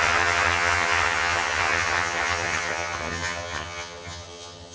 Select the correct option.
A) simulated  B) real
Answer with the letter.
A